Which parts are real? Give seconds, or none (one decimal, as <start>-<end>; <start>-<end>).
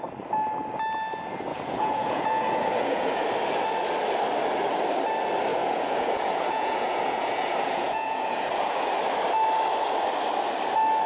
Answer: 0.0-1.5; 3.2-5.5; 8.9-11.1